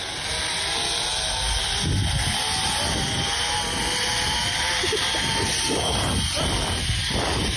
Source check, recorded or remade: recorded